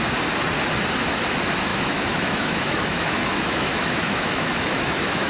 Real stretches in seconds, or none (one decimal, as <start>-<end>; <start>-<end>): 0.0-1.7